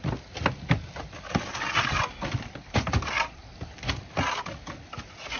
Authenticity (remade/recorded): recorded